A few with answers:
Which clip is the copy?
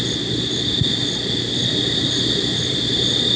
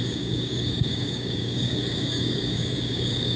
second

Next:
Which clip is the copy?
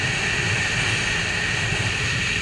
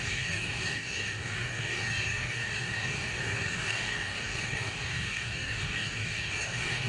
second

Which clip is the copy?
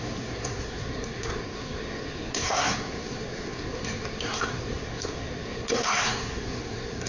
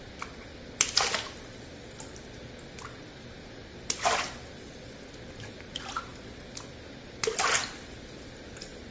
first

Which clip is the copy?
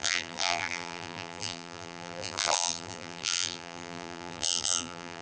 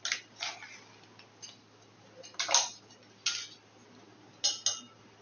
first